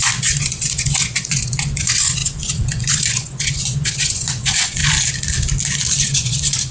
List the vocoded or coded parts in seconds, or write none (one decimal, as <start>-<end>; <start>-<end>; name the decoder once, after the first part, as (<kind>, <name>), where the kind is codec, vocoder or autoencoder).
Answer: 0.0-4.8 (vocoder, Vocos); 6.0-6.7